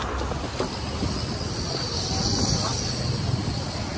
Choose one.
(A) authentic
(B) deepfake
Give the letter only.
A